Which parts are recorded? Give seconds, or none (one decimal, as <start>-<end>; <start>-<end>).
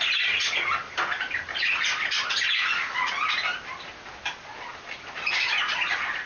0.0-6.3